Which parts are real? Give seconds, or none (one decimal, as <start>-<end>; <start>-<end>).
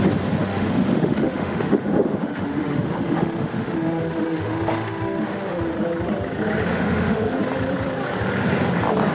0.0-0.4; 5.6-6.7; 7.4-9.1